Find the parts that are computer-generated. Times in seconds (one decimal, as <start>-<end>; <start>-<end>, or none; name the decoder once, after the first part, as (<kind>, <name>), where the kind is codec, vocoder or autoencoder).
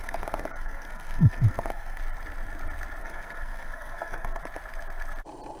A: 0.0-2.0 (codec, SNAC); 3.0-4.4